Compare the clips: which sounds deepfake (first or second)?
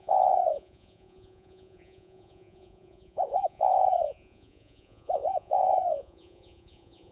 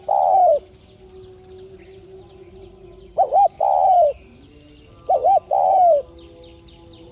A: first